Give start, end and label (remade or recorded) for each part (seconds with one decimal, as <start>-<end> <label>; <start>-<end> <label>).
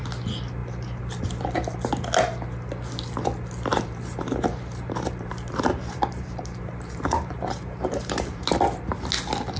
0.0-3.7 recorded; 3.7-8.4 remade; 8.4-9.6 recorded